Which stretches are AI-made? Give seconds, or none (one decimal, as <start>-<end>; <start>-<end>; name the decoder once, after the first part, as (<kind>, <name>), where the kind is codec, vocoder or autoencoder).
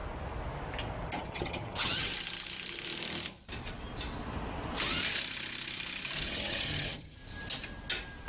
1.2-2.1 (vocoder, HiFi-GAN); 6.2-7.2